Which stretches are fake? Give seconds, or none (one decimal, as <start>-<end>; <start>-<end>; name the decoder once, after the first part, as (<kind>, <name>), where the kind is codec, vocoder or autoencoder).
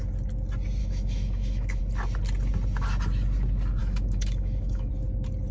0.8-1.8 (autoencoder, DAC-VAE); 3.8-4.9